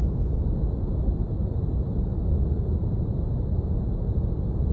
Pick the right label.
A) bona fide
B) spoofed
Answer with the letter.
A